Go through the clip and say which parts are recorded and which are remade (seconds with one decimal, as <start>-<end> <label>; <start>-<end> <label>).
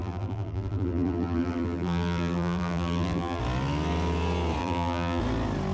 0.0-3.4 remade; 3.4-4.6 recorded; 4.6-5.2 remade; 5.2-5.7 recorded